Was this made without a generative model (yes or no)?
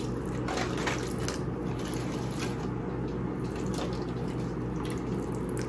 yes